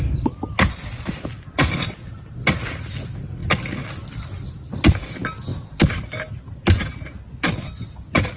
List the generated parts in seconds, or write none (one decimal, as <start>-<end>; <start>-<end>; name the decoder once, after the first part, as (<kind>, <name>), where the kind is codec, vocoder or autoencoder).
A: none